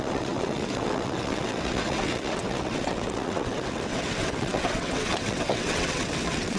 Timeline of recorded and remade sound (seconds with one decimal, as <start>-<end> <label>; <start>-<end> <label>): 0.0-6.6 remade